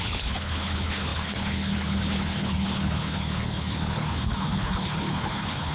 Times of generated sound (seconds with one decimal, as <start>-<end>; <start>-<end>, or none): 0.0-5.7